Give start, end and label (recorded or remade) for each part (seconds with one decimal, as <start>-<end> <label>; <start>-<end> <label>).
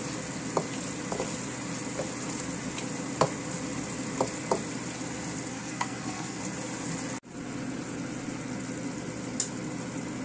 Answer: 0.0-5.5 recorded; 5.5-6.4 remade; 6.4-10.2 recorded